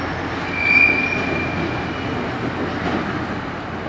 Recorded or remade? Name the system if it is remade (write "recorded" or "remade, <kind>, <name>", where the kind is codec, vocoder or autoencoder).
recorded